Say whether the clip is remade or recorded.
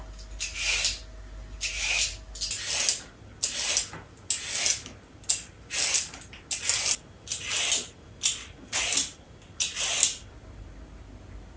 recorded